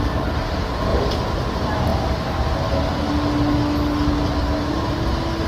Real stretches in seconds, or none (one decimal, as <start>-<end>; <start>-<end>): 0.0-0.9; 1.4-5.5